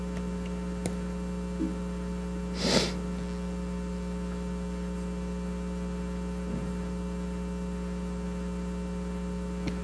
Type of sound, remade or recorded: recorded